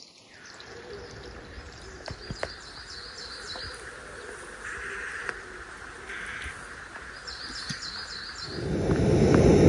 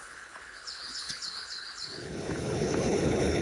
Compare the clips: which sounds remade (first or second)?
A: second